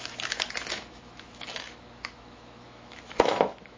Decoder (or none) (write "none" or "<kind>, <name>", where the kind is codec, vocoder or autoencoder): autoencoder, DAC-VAE